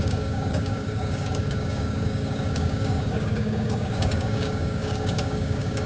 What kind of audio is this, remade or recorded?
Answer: remade